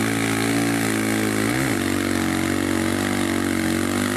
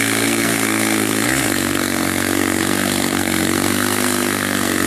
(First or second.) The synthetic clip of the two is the second